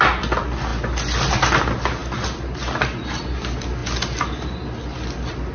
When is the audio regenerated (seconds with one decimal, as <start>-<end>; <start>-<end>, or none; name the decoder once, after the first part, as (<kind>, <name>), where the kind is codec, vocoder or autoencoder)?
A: none